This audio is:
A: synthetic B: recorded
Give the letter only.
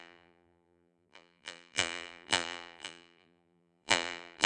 A